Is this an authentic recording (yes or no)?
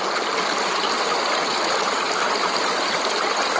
yes